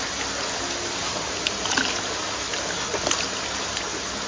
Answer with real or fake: real